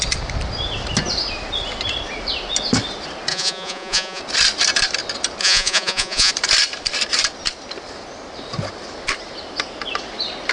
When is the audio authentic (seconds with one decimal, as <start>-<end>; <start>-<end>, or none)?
0.0-3.3; 4.2-5.4; 6.3-10.5